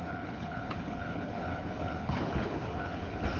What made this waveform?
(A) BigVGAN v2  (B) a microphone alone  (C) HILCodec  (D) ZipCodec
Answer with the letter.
C